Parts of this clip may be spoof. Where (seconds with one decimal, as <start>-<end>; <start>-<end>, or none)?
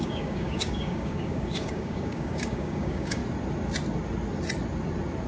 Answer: 0.0-3.2